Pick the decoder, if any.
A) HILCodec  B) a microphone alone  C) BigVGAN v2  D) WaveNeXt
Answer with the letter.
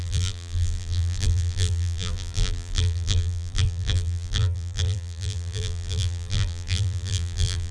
C